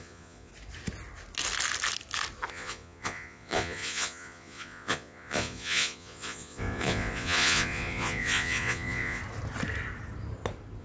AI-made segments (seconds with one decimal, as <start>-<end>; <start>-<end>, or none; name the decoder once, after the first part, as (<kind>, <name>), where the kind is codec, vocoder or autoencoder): 0.0-0.5 (vocoder, Vocos); 2.5-9.2